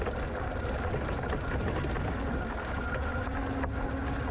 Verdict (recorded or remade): recorded